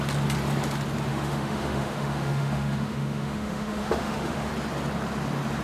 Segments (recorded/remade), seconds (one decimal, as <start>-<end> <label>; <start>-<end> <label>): 0.0-1.1 recorded; 1.1-4.5 remade; 4.5-5.6 recorded